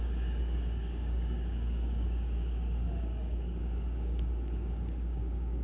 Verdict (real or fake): fake